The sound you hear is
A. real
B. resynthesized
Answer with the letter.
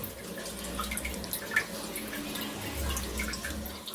A